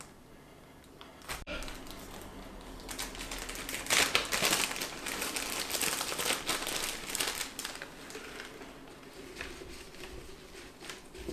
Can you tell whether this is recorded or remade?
recorded